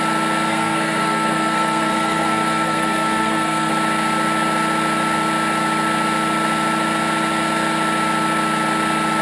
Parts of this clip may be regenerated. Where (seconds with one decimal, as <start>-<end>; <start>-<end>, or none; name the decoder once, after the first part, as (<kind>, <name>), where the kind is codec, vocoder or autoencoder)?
0.5-3.7 (codec, SNAC)